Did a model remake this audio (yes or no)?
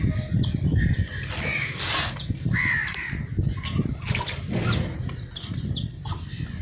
no